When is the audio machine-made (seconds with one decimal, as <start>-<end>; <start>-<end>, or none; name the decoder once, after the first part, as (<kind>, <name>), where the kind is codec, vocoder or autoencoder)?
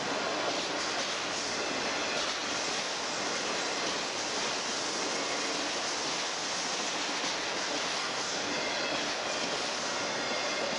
7.9-8.5 (codec, SNAC)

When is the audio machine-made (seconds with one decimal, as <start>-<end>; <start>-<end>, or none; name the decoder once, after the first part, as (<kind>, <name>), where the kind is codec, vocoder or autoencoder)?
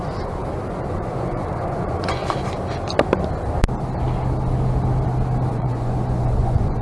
0.0-0.4 (vocoder, Vocos); 0.9-2.2; 5.5-6.8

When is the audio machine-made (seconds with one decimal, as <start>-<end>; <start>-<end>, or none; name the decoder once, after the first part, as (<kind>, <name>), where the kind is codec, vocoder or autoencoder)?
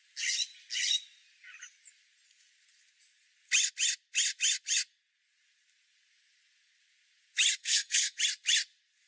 7.6-8.2 (codec, SNAC)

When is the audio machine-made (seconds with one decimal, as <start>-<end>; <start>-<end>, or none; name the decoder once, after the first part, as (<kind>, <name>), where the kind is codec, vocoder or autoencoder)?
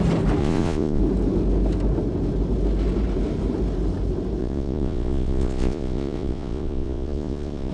0.4-1.0 (vocoder, Vocos); 4.4-7.7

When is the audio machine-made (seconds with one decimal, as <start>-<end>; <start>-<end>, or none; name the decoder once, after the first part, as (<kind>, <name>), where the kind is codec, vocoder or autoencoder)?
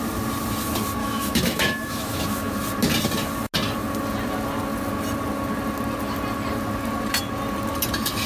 1.0-2.5 (autoencoder, DAC-VAE)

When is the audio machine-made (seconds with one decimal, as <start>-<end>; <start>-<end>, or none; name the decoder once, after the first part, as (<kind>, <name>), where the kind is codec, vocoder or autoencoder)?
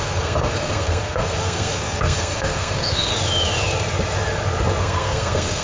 0.0-3.1 (codec, SNAC); 4.8-5.6